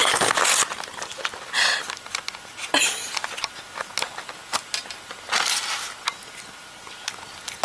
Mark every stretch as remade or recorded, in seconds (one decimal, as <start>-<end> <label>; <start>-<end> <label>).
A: 0.0-7.6 recorded